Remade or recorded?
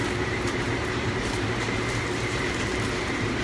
remade